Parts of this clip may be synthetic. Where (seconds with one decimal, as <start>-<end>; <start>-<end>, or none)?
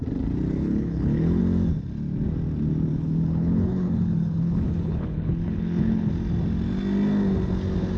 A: 0.6-1.4; 2.9-6.1